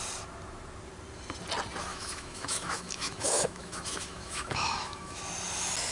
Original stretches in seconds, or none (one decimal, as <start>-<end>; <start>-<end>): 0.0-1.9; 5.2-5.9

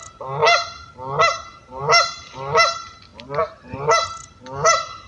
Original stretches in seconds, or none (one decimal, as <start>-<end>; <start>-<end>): 0.0-5.1

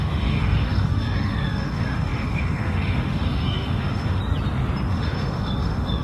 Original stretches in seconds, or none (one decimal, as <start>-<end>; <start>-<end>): 4.2-4.9

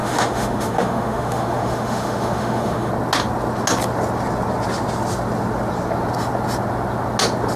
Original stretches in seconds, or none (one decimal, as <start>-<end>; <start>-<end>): 2.9-7.6

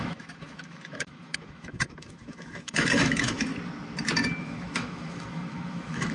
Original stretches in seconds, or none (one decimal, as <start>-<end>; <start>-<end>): 3.5-4.4

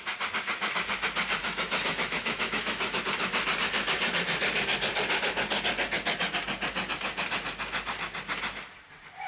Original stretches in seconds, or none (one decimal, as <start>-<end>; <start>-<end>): 0.0-1.4; 3.0-9.3

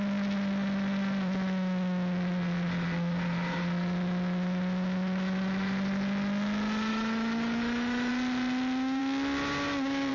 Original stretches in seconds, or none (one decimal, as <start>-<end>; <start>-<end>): 0.0-6.9; 8.1-10.1